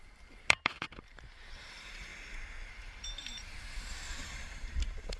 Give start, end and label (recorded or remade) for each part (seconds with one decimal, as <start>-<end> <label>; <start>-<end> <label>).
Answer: 0.0-2.1 remade; 2.1-2.7 recorded; 2.7-5.2 remade